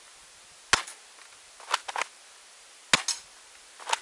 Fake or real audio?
real